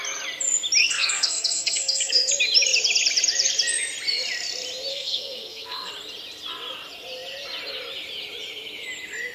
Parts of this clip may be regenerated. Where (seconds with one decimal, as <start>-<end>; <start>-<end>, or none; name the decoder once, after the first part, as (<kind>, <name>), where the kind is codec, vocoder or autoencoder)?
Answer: 0.8-2.3 (codec, SNAC); 4.9-5.9